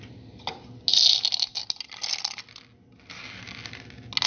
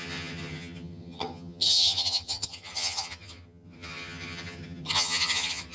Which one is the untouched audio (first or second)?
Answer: first